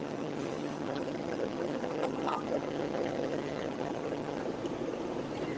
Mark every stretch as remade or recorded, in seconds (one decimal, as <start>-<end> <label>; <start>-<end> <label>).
0.0-4.4 remade; 4.4-5.6 recorded